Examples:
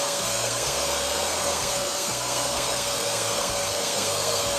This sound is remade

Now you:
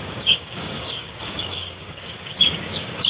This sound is remade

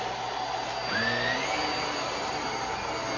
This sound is recorded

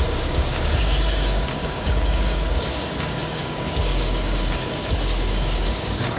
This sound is remade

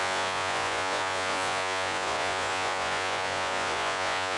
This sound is remade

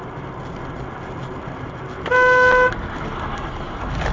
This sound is recorded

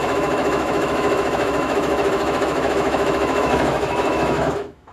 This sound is remade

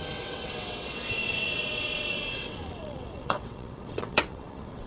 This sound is remade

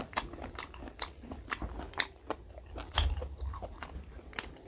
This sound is recorded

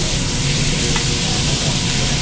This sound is remade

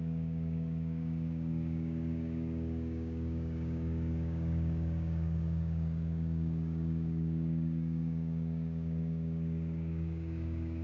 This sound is remade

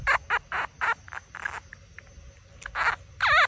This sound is recorded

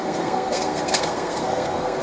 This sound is remade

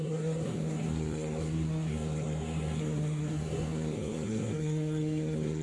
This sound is remade